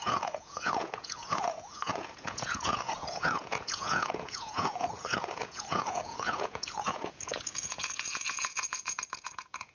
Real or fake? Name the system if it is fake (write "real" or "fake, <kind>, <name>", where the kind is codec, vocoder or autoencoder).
fake, vocoder, Vocos